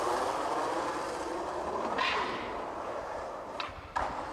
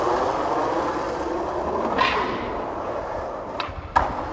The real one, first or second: second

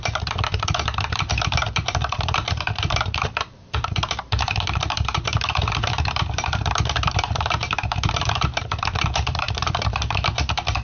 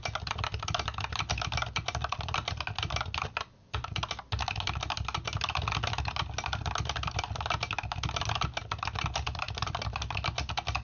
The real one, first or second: second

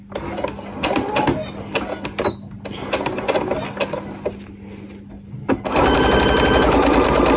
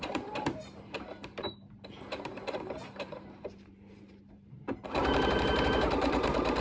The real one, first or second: first